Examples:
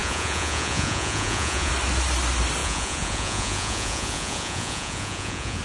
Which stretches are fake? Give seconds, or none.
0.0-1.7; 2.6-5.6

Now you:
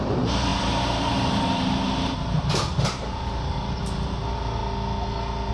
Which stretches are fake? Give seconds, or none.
0.0-4.6

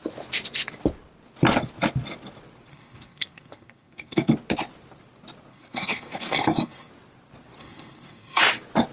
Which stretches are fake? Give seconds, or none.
2.7-4.3; 5.5-6.9; 7.6-8.4

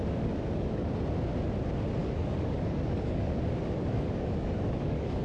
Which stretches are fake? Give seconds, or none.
0.0-0.9; 2.0-5.2

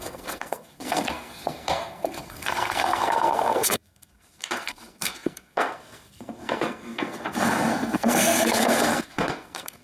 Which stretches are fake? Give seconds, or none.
0.0-9.8

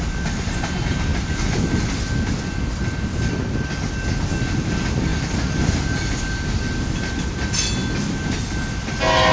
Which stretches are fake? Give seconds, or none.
none